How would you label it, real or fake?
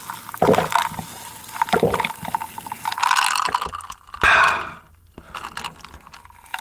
real